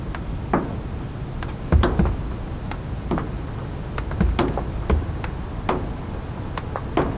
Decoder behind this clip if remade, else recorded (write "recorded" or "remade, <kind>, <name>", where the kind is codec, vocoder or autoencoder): recorded